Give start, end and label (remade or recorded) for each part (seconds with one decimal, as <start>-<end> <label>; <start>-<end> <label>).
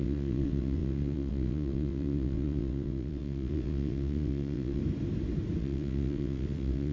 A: 0.0-4.8 remade; 4.8-5.6 recorded; 5.6-6.9 remade